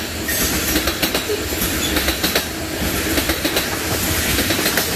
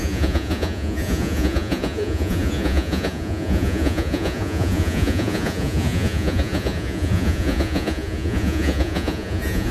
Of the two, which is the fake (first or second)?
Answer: second